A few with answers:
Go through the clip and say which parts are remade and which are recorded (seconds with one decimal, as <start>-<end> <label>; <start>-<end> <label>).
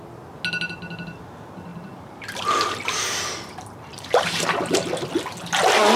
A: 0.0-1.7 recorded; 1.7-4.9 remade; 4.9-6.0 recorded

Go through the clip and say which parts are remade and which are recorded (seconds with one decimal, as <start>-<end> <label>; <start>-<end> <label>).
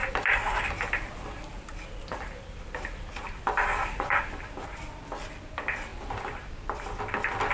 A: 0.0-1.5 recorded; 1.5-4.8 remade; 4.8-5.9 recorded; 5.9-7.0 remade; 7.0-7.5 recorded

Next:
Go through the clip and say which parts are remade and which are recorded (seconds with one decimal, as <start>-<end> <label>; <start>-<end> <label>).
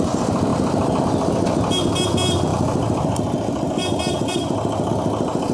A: 0.0-0.5 recorded; 0.5-1.0 remade; 1.0-2.5 recorded; 2.5-4.9 remade; 4.9-5.5 recorded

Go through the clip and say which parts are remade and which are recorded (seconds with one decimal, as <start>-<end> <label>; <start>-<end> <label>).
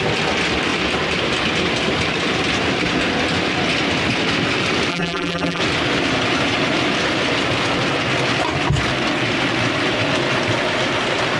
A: 0.0-4.9 recorded; 4.9-5.6 remade; 5.6-11.4 recorded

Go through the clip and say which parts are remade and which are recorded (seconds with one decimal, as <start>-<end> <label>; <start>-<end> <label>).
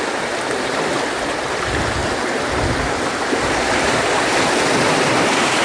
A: 0.0-2.0 remade; 2.0-3.4 recorded; 3.4-5.6 remade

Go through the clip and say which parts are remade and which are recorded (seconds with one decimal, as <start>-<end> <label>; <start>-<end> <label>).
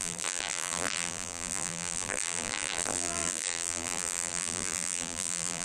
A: 0.0-5.6 remade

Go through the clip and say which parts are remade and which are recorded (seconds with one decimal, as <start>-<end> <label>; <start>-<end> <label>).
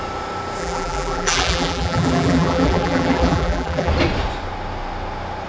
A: 0.0-0.6 recorded; 0.6-3.9 remade; 3.9-5.5 recorded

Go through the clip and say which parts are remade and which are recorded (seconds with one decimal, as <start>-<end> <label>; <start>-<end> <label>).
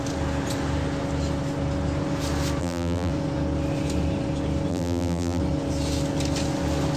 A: 0.0-2.6 recorded; 2.6-3.1 remade; 3.1-4.7 recorded; 4.7-5.4 remade; 5.4-7.0 recorded